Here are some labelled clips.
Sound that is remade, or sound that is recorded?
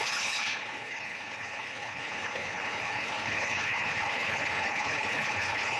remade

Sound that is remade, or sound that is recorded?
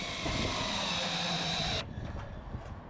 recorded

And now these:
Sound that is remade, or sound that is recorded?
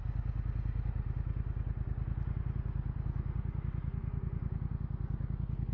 recorded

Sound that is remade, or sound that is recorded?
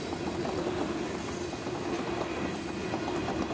recorded